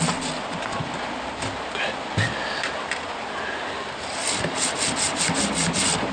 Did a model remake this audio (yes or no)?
no